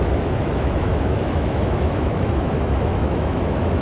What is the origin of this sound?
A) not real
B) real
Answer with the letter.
A